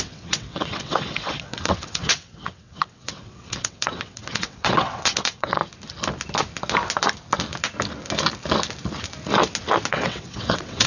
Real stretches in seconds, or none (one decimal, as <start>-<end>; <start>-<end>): 5.6-9.9